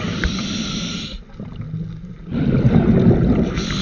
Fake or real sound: real